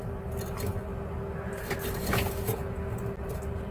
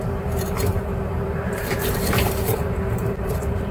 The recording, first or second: first